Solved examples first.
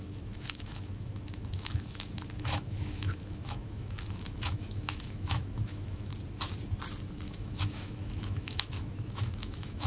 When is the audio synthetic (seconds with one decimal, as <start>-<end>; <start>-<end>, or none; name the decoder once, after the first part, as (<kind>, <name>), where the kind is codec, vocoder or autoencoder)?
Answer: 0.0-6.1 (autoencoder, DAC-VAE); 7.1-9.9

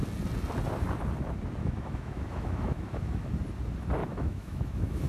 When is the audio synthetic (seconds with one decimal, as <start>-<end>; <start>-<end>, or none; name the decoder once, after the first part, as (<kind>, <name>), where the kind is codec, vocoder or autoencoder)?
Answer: 1.6-3.3 (autoencoder, DAC-VAE); 4.0-5.1

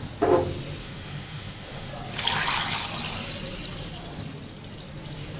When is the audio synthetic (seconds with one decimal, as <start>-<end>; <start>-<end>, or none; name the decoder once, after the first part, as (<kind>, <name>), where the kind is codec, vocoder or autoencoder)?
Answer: 0.8-1.9 (autoencoder, DAC-VAE)

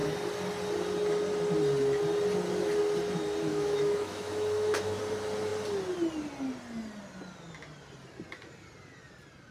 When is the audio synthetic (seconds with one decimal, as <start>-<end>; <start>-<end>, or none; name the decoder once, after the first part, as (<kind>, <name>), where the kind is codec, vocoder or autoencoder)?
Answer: 3.5-5.0 (autoencoder, DAC-VAE)

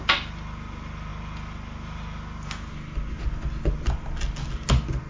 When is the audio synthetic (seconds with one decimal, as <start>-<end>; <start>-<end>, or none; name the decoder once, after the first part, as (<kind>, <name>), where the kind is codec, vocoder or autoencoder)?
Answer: none

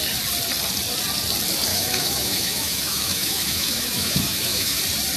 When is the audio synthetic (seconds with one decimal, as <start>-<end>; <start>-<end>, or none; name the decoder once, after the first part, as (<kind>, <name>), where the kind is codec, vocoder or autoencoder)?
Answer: 1.7-4.8 (autoencoder, DAC-VAE)